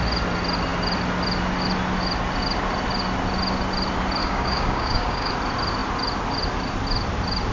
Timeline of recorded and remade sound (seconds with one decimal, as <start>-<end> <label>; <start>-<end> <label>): 0.0-4.2 recorded; 4.2-5.3 remade; 5.3-7.5 recorded